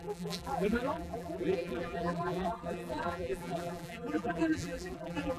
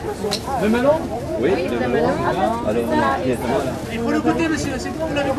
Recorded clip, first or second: second